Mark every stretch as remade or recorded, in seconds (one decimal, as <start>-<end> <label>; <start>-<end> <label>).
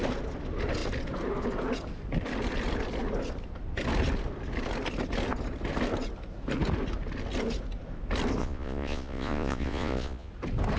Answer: 0.0-8.4 recorded; 8.4-10.3 remade; 10.3-10.8 recorded